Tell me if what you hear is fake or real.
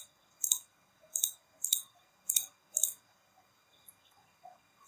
fake